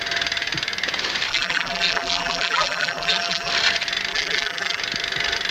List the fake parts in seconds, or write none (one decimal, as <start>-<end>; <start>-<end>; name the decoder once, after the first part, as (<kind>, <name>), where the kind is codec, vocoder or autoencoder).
1.3-3.5 (vocoder, BigVGAN v2); 4.1-4.8